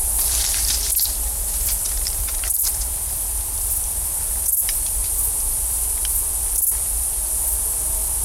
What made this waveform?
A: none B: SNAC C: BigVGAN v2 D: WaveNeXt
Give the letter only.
C